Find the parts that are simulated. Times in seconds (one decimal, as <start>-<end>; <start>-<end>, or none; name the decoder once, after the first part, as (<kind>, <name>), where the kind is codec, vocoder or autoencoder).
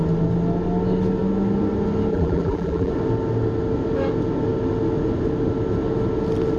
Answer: 2.1-2.9 (vocoder, BigVGAN v2)